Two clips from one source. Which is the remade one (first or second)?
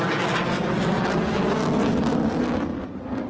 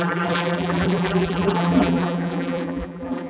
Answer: second